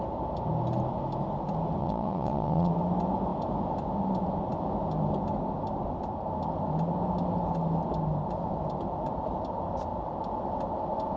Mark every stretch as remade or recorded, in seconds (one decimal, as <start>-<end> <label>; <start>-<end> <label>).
0.0-1.8 recorded; 1.8-2.7 remade; 2.7-11.2 recorded